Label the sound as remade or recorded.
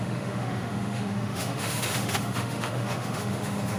remade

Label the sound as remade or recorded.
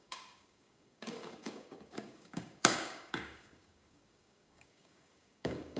remade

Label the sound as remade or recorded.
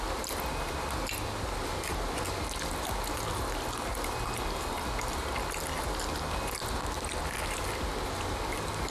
recorded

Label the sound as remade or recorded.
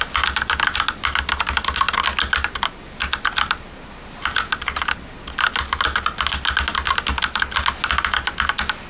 recorded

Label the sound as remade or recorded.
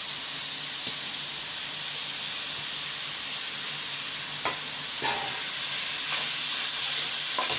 recorded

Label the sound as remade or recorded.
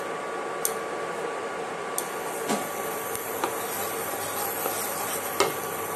recorded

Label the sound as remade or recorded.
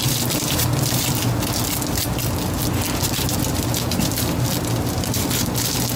recorded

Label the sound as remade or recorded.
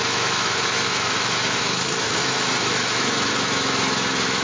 remade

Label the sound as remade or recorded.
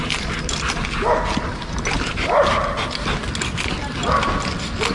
recorded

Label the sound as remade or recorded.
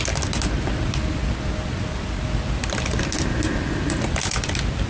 recorded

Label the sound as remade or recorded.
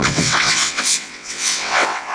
remade